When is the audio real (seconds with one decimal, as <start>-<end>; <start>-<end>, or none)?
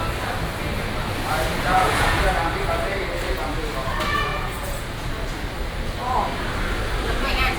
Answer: 0.0-1.5; 2.2-4.3; 5.1-7.6